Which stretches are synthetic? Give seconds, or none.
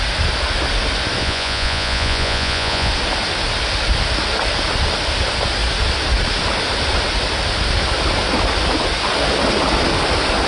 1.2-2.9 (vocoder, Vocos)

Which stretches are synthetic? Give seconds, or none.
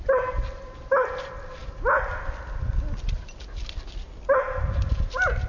none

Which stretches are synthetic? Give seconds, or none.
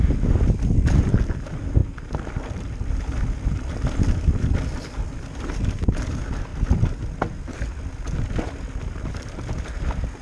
none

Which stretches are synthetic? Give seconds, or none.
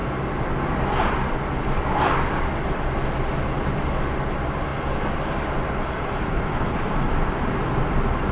0.0-0.6 (vocoder, BigVGAN v2)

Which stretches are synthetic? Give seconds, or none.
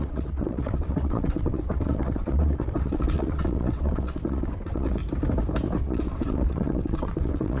0.0-5.0 (vocoder, WaveNeXt); 5.8-7.6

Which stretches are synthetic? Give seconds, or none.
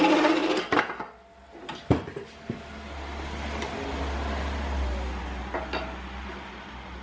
none